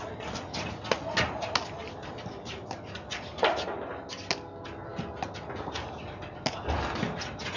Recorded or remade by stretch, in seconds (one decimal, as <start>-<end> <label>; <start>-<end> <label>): 0.0-7.6 recorded